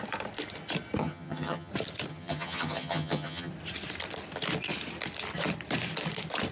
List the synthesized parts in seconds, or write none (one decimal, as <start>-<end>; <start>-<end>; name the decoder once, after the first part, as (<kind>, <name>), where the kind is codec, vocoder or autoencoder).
1.0-1.7 (vocoder, HiFi-GAN); 2.1-3.5